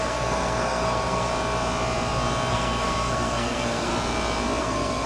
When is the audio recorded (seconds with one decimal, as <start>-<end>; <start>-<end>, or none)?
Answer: 1.3-2.5; 3.9-4.6